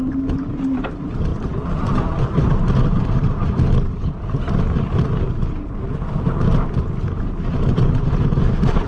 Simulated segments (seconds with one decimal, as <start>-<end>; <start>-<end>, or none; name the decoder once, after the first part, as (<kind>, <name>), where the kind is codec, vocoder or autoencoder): none